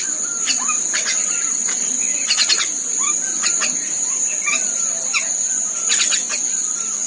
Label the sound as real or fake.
real